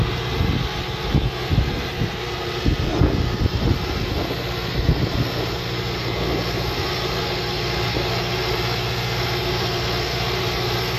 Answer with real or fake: real